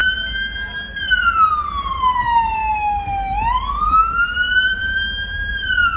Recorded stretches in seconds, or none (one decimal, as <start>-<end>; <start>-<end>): 0.0-1.2; 2.6-3.5